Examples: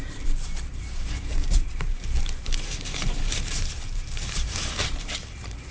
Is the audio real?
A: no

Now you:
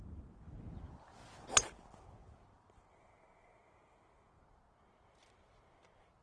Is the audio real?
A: yes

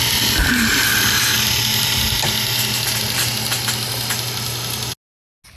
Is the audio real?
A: yes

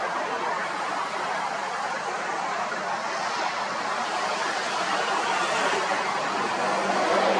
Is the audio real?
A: yes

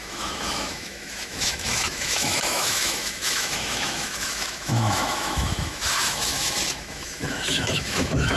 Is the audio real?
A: no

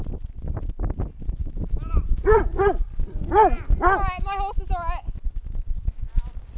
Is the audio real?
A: yes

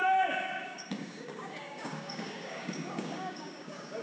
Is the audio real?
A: no